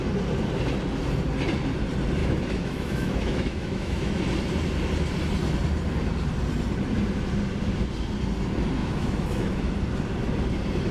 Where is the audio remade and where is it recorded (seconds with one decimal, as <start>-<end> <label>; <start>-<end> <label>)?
0.0-2.2 recorded; 2.2-4.2 remade; 4.2-8.8 recorded; 8.8-9.7 remade; 9.7-10.9 recorded